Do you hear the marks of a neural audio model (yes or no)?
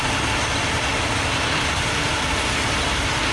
no